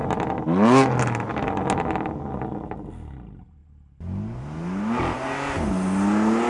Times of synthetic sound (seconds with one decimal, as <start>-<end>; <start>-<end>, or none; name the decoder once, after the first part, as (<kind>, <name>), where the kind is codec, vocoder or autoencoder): none